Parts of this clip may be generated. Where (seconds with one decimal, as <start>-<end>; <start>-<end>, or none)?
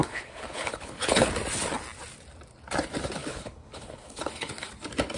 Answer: 0.0-1.3; 3.2-4.7